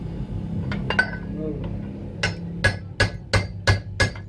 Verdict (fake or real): real